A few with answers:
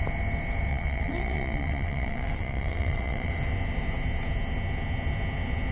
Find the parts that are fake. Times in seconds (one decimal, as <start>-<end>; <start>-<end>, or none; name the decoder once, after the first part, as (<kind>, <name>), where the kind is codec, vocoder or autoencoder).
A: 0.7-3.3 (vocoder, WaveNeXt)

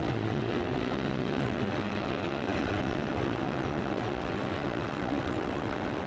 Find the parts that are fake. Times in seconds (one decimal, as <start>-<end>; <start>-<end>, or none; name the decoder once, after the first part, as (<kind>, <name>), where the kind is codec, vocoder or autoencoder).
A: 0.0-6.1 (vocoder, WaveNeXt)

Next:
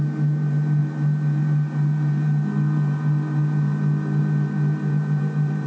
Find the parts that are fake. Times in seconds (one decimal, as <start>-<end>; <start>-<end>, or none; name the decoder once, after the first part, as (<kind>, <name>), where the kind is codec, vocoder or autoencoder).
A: none

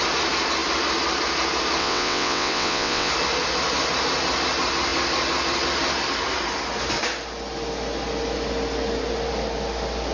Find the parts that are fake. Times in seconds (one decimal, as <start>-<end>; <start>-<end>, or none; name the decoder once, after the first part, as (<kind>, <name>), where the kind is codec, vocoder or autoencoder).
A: 1.8-3.1 (vocoder, WaveNeXt)

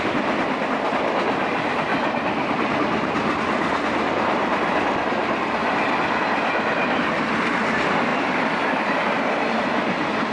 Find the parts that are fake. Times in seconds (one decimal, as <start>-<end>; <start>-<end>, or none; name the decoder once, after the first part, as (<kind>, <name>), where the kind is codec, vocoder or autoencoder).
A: none